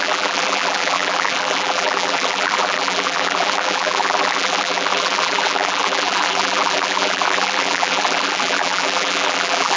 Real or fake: fake